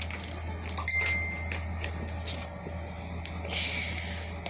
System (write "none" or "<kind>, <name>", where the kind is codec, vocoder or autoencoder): none